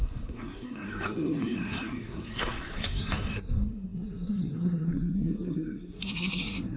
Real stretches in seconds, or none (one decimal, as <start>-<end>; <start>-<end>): none